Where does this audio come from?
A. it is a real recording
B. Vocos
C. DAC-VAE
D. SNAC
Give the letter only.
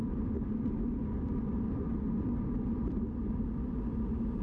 A